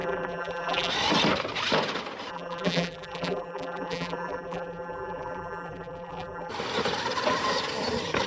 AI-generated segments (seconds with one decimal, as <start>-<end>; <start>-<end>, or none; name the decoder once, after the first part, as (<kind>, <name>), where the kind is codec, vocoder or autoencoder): 0.0-0.9 (vocoder, BigVGAN v2); 2.3-6.5